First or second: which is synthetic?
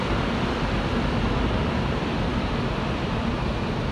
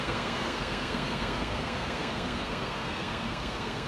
second